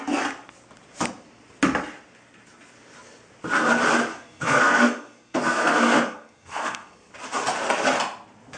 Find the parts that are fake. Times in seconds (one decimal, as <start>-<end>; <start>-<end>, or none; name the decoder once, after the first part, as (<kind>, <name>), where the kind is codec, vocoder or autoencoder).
4.1-7.1 (codec, SNAC)